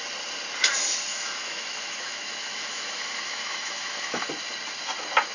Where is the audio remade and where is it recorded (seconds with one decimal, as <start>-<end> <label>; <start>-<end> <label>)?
0.0-1.1 recorded; 1.1-4.3 remade; 4.3-5.3 recorded